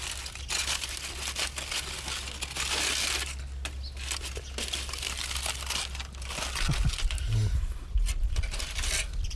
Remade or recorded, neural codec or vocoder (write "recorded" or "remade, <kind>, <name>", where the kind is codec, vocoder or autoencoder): recorded